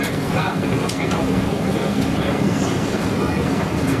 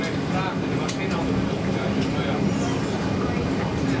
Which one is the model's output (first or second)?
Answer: first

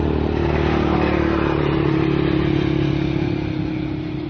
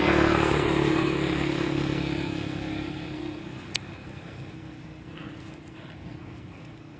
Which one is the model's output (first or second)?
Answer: second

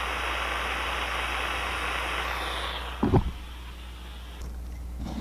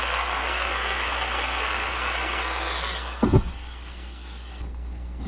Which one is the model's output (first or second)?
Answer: second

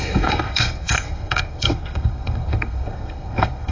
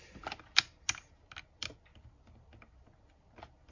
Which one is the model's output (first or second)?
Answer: first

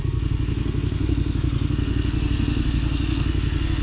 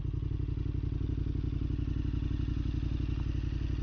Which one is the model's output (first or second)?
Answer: first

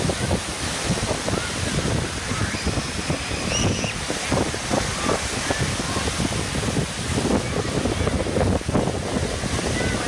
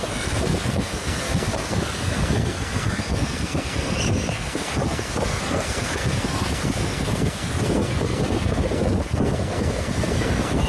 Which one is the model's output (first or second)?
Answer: second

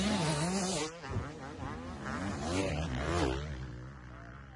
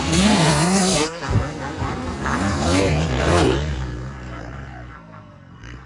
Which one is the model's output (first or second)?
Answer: second